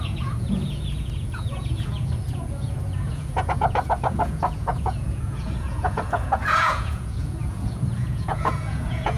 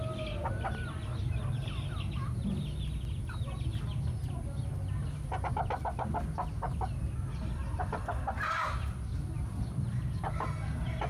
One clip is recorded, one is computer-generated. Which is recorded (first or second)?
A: second